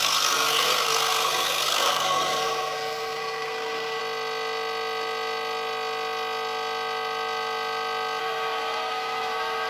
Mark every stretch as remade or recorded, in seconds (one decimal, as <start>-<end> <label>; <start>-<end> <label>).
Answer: 0.0-4.0 remade; 4.0-8.2 recorded; 8.2-9.7 remade